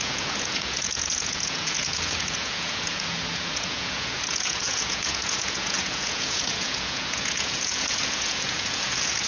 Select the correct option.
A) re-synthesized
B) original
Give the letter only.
A